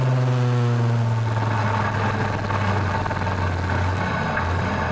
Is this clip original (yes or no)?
yes